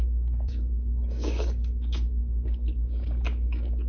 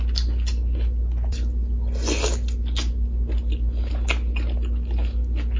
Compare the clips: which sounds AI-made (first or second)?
first